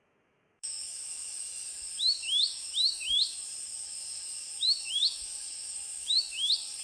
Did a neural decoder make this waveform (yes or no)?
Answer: yes